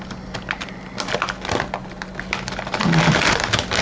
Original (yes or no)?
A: yes